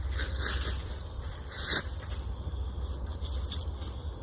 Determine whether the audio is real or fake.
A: real